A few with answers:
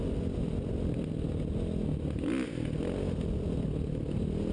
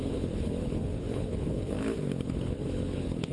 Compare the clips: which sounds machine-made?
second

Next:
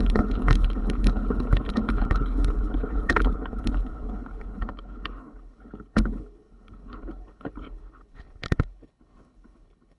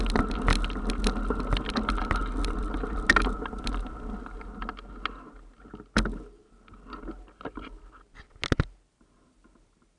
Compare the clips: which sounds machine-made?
first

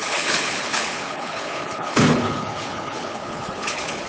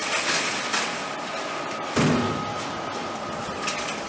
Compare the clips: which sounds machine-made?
first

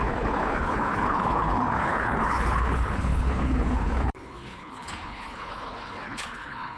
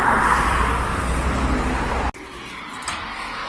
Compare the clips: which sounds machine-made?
first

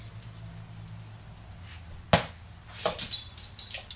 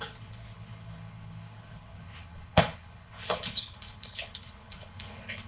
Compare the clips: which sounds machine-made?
second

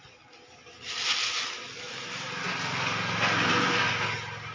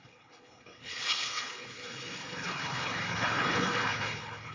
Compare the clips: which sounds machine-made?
second